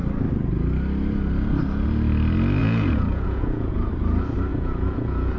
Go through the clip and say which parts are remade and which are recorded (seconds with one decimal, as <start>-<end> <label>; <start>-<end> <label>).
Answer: 0.0-2.6 recorded; 2.6-3.9 remade; 3.9-4.5 recorded; 4.5-5.4 remade